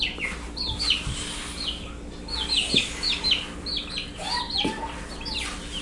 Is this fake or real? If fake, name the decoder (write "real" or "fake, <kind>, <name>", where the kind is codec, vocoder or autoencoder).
real